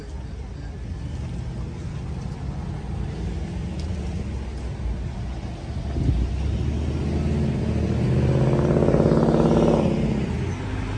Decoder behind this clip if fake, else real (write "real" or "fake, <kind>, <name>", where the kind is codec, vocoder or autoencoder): real